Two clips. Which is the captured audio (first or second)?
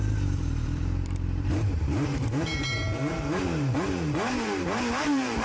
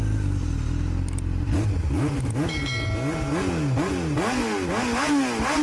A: second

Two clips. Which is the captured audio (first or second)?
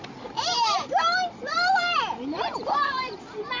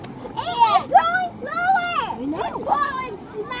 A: second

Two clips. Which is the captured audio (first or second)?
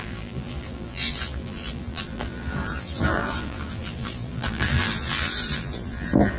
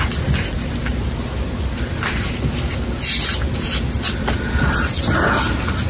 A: second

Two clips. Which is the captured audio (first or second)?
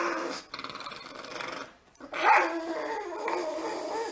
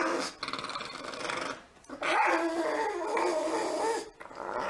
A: second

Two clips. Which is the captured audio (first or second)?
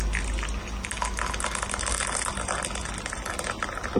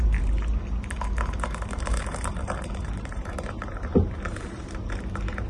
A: first